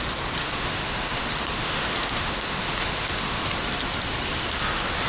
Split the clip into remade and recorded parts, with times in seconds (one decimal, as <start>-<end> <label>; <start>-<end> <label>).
0.0-0.4 recorded; 0.4-3.5 remade; 3.5-5.1 recorded